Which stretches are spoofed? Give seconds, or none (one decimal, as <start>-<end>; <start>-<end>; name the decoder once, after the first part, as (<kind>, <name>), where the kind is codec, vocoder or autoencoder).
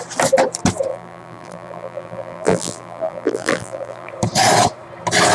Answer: 0.9-4.1 (vocoder, BigVGAN v2)